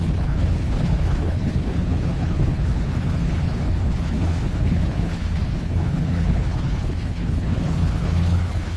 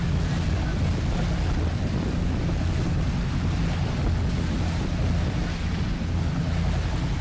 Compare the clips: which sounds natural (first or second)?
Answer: second